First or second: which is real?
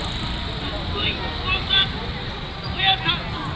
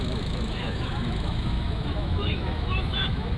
first